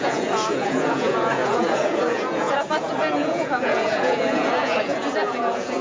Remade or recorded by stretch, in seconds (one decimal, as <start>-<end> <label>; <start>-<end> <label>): 0.0-5.8 remade